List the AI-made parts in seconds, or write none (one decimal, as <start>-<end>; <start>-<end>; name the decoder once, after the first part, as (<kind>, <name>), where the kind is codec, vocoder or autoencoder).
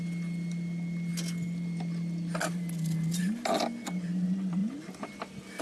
none